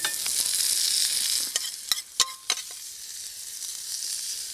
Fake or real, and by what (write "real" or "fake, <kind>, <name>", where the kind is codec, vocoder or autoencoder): real